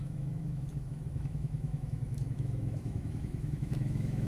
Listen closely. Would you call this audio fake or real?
fake